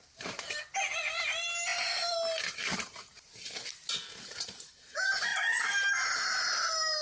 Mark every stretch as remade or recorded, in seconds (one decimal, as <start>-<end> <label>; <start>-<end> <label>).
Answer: 0.0-7.0 recorded

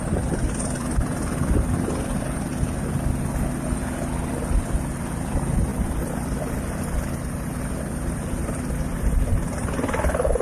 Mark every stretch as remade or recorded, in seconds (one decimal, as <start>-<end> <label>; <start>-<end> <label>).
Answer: 0.0-2.5 remade; 2.5-4.3 recorded; 4.3-10.4 remade

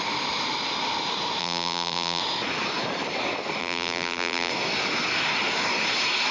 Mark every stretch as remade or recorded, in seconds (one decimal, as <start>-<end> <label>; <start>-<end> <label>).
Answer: 0.0-1.4 recorded; 1.4-2.2 remade; 2.2-3.6 recorded; 3.6-4.5 remade; 4.5-6.3 recorded